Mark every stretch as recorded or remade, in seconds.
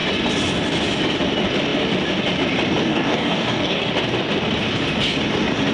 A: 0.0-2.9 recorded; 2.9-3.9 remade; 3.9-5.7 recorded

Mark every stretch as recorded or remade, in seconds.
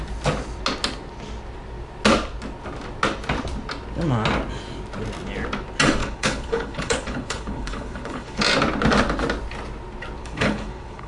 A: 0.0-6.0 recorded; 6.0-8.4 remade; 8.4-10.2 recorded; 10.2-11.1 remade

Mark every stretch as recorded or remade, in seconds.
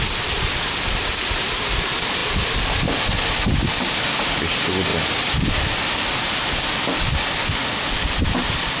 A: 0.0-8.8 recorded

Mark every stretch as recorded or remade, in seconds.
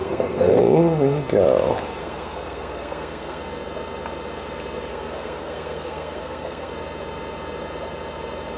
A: 0.0-0.6 remade; 0.6-2.0 recorded; 2.0-3.4 remade; 3.4-4.9 recorded; 4.9-6.7 remade; 6.7-8.6 recorded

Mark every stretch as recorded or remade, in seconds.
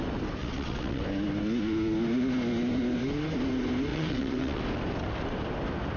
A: 0.0-0.4 recorded; 0.4-1.0 remade; 1.0-3.9 recorded; 3.9-4.6 remade; 4.6-6.0 recorded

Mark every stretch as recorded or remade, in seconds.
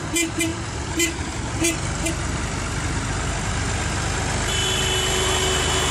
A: 0.0-5.9 recorded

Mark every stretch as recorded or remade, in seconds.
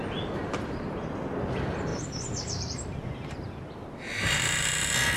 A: 0.0-0.4 recorded; 0.4-1.1 remade; 1.1-1.9 recorded; 1.9-4.4 remade; 4.4-5.2 recorded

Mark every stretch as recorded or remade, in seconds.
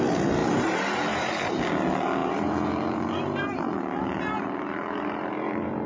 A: 0.0-0.4 recorded; 0.4-1.5 remade; 1.5-2.2 recorded; 2.2-5.9 remade